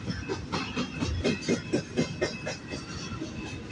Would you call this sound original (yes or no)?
yes